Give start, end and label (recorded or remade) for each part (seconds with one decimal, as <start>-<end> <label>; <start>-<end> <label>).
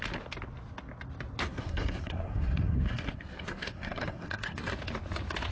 0.0-1.4 recorded; 1.4-4.7 remade; 4.7-5.5 recorded